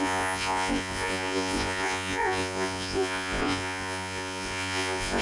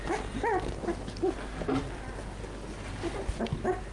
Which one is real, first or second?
second